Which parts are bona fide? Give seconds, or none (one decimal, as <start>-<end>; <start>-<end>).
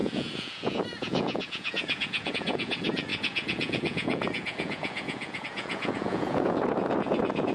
none